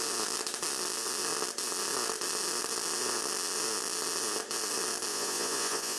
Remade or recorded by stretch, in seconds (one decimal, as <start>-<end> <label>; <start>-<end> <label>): 0.0-5.1 recorded; 5.1-6.0 remade